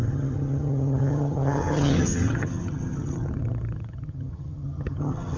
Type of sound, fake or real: fake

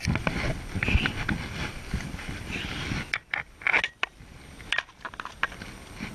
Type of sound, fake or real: real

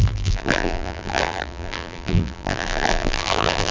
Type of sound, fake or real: fake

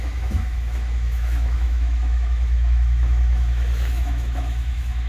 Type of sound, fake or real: fake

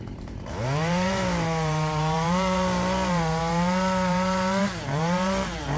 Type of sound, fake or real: fake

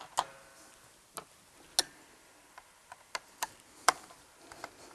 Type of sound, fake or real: real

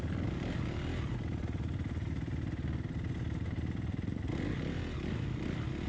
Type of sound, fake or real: real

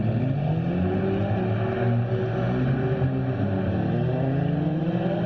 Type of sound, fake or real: real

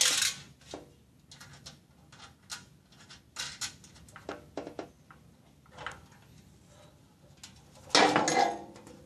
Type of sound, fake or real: real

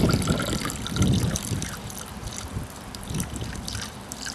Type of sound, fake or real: fake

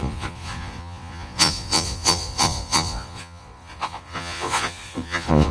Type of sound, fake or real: fake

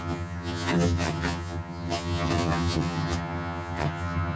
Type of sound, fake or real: fake